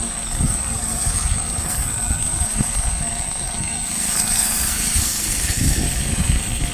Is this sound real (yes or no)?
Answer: no